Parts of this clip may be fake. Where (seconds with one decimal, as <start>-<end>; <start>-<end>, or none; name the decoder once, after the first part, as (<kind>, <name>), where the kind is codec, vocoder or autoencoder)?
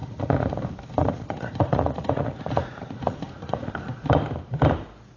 0.0-0.6 (vocoder, Vocos); 1.0-3.7